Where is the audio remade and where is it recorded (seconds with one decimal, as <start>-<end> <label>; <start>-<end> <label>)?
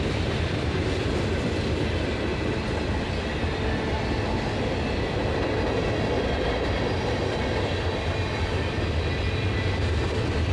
0.0-10.5 recorded